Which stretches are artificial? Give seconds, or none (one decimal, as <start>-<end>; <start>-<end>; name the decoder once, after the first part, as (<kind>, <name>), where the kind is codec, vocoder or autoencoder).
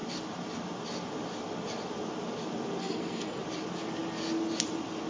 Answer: 2.8-3.4 (codec, SNAC)